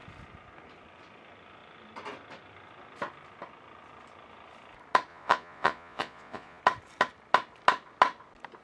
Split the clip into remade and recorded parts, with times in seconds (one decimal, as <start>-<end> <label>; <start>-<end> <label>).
0.0-5.1 recorded; 5.1-6.6 remade; 6.6-8.6 recorded